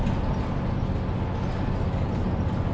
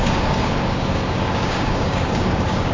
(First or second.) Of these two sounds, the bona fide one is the first